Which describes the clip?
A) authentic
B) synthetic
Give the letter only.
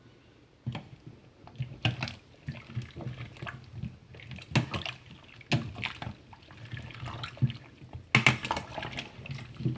A